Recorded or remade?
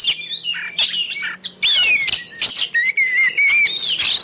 recorded